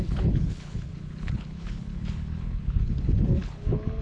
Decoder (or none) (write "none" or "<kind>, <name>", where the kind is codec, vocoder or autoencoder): codec, HILCodec